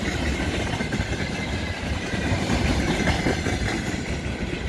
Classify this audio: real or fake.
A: fake